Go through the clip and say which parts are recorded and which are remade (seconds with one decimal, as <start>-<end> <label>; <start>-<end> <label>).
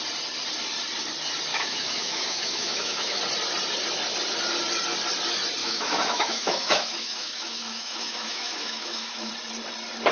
0.0-1.5 recorded; 1.5-3.2 remade; 3.2-5.6 recorded; 5.6-9.3 remade; 9.3-10.1 recorded